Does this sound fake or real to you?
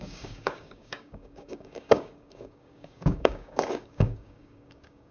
fake